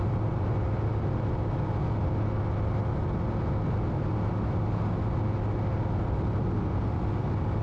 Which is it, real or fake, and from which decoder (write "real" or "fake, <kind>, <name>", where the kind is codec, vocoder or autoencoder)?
real